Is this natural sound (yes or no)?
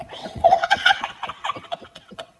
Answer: no